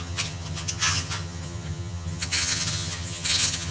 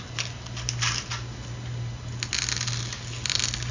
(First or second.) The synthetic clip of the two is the first